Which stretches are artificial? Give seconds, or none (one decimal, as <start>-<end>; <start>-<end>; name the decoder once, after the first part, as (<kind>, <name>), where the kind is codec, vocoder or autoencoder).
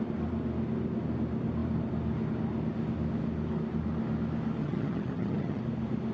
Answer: 4.6-5.6 (vocoder, HiFi-GAN)